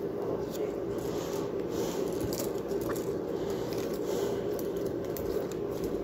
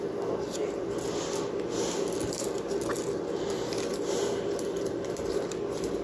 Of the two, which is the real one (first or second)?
second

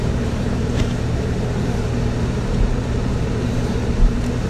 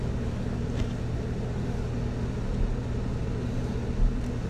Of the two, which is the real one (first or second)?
second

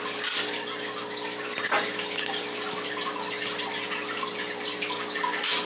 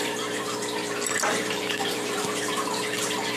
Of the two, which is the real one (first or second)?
first